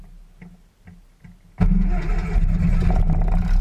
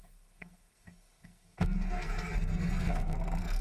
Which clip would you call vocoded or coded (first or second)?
second